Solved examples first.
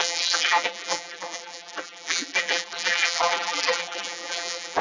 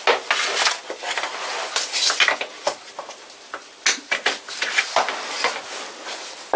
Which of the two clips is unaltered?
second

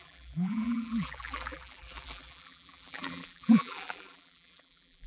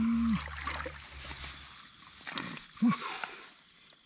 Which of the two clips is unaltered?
second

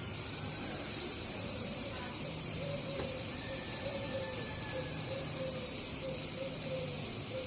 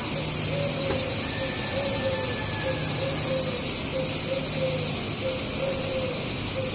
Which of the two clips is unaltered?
second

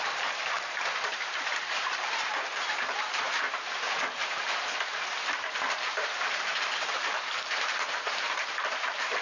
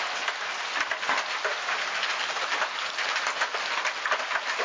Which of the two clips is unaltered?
second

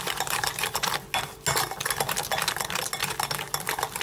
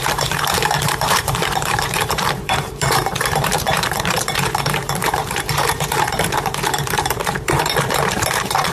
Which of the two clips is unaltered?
first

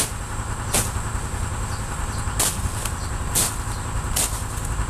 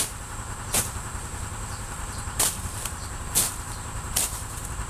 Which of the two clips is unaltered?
first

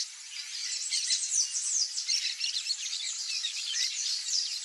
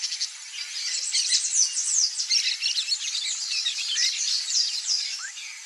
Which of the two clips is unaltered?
second